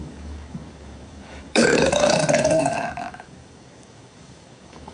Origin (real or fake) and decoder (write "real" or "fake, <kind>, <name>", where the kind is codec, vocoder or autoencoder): fake, codec, DAC